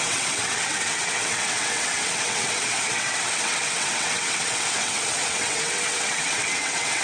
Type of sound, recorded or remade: remade